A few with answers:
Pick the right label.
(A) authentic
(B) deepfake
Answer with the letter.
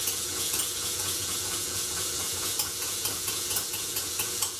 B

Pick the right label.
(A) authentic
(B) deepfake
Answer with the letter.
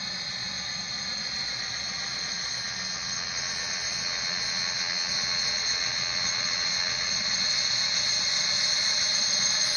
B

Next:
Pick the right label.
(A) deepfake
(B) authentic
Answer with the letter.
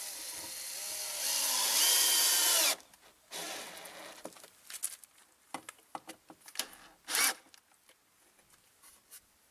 B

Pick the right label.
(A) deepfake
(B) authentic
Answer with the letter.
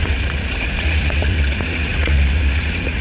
A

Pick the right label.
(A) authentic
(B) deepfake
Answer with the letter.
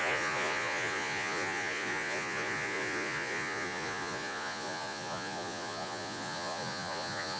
B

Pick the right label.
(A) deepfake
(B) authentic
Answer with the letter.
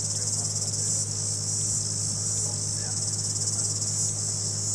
B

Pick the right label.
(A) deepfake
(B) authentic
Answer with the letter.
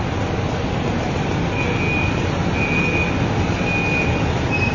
B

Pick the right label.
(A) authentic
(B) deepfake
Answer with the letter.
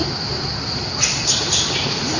A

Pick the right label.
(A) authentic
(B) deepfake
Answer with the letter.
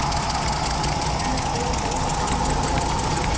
A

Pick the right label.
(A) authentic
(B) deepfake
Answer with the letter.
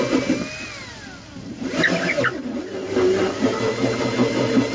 A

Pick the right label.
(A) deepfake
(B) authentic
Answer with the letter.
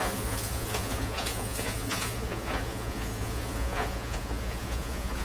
A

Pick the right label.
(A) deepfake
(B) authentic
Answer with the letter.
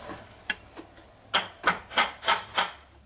B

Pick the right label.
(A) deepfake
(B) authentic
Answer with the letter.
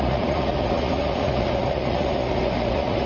A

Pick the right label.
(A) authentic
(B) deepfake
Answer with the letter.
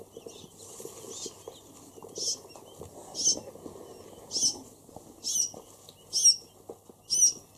A